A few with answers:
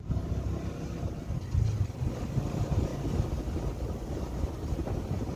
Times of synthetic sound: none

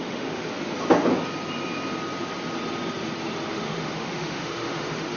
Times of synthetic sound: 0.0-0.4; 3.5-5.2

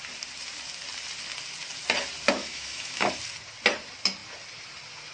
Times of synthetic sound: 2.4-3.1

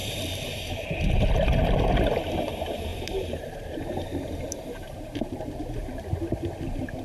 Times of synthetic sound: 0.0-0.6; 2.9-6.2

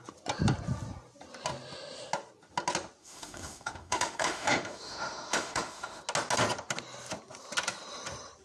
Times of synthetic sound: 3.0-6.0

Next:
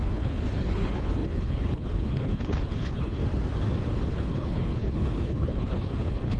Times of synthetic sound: 0.0-3.2; 4.1-6.4

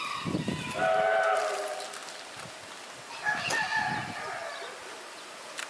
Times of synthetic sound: 0.0-2.0; 5.0-5.7

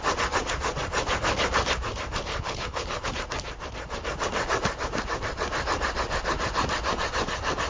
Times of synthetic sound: 2.3-3.1